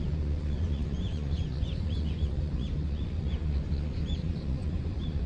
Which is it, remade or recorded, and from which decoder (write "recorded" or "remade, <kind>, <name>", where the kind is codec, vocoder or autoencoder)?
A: remade, vocoder, Vocos